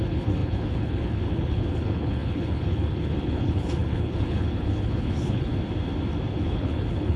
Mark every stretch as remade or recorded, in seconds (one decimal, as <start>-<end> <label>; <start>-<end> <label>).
0.0-5.5 remade; 5.5-6.3 recorded; 6.3-7.2 remade